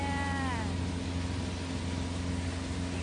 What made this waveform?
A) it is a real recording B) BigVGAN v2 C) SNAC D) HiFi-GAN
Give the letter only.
A